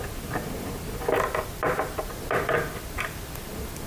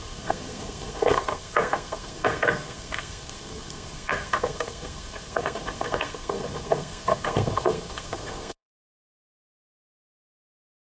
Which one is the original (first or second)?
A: first